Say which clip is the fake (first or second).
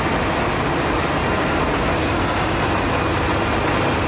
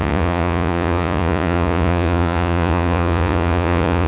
second